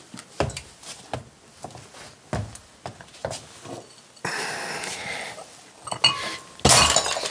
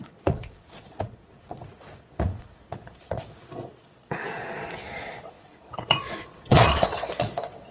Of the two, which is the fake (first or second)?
second